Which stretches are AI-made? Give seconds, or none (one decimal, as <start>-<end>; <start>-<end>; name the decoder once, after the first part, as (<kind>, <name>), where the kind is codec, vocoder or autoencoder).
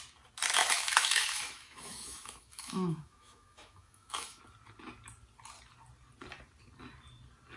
0.6-4.4 (autoencoder, DAC-VAE)